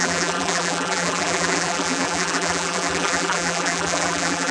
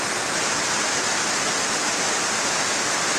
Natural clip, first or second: second